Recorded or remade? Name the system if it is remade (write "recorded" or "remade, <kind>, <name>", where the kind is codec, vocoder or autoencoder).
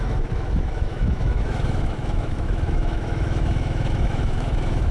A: remade, autoencoder, DAC-VAE